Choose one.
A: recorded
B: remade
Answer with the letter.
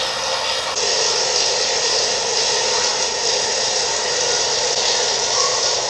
A